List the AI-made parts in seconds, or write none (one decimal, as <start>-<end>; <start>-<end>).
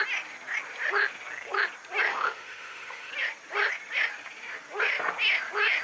2.1-3.1